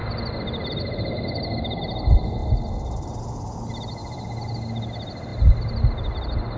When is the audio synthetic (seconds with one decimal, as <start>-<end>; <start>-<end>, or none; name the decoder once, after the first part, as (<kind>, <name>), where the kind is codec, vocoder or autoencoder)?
none